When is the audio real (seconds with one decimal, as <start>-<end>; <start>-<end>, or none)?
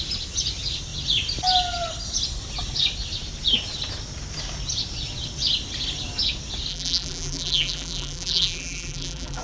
0.0-6.7